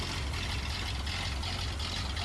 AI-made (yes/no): no